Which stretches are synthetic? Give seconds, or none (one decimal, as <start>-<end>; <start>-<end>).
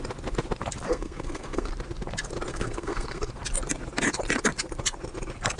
0.9-1.7; 2.5-3.3